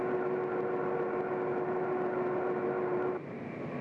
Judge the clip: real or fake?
real